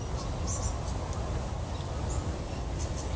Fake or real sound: real